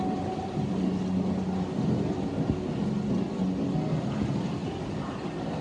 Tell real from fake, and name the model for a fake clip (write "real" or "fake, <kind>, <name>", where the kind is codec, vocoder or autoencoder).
real